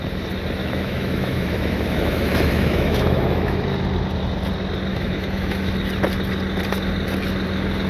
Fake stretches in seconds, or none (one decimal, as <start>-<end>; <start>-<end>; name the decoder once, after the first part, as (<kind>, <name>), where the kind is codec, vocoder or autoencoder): 0.6-3.7 (autoencoder, DAC-VAE); 4.9-5.7